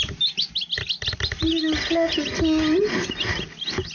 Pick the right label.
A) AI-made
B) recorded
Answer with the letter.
B